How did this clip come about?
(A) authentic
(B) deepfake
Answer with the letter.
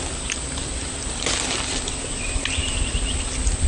A